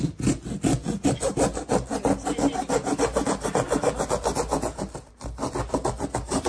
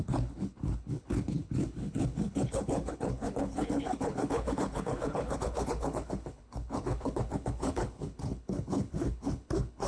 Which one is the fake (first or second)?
second